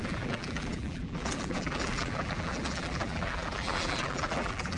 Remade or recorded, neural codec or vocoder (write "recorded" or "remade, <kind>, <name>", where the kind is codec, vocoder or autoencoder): remade, vocoder, BigVGAN v2